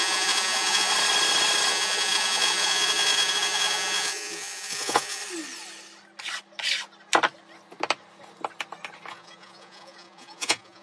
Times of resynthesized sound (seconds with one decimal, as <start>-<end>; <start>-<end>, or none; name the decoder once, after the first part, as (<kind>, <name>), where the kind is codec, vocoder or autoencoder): 0.0-0.9 (vocoder, Vocos); 1.7-5.2; 9.1-10.8